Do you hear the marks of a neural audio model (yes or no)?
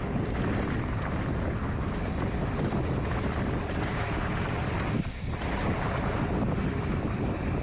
no